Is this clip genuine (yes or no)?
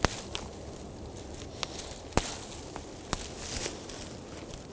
yes